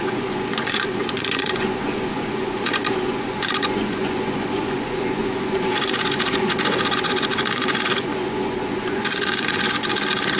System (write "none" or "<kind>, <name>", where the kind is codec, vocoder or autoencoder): vocoder, Vocos